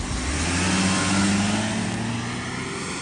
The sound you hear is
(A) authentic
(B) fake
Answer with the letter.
A